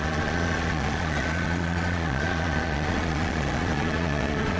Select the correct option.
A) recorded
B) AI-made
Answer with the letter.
B